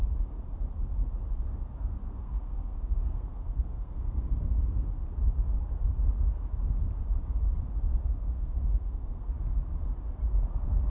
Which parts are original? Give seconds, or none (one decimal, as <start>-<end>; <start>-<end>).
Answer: 0.0-2.0; 4.9-8.1; 9.3-10.9